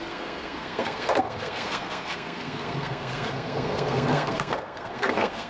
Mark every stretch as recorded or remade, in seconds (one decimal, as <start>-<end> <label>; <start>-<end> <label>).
0.0-5.5 remade